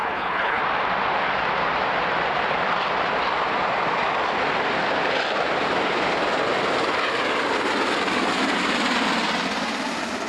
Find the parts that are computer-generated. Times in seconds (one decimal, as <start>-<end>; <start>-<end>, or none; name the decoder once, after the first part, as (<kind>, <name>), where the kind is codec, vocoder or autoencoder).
0.0-0.6 (codec, HILCodec)